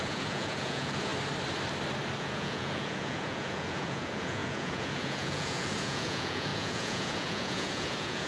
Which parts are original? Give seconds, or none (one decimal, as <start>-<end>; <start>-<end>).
1.1-2.2